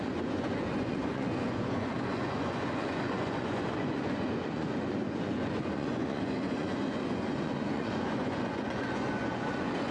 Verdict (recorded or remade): remade